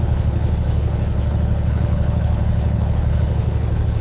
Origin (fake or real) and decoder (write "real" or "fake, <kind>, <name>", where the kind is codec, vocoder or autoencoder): fake, codec, HILCodec